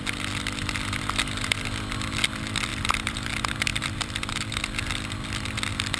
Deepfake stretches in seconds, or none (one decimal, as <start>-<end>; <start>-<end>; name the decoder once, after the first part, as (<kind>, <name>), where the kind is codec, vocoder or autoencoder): 2.7-3.3 (vocoder, BigVGAN v2); 3.7-4.6